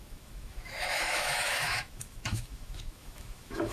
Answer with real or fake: fake